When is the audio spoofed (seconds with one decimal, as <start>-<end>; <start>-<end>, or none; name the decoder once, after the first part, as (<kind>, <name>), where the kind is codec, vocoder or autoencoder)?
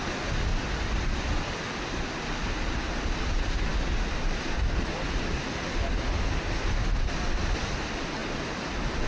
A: none